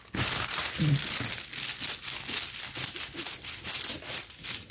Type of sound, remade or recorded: recorded